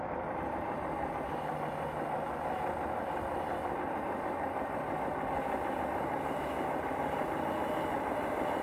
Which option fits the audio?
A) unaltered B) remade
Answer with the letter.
A